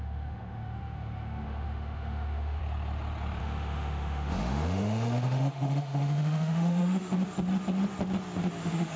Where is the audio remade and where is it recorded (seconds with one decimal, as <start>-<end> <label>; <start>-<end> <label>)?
0.0-2.6 remade; 2.6-3.4 recorded; 3.4-7.1 remade; 7.1-8.6 recorded; 8.6-9.0 remade